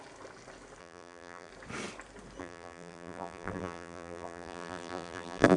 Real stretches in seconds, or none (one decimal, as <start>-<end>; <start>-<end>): 0.0-0.8; 1.5-2.4